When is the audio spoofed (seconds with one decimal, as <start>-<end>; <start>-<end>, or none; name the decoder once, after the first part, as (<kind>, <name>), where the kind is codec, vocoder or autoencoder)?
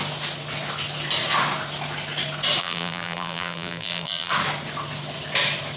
2.6-4.3 (vocoder, BigVGAN v2)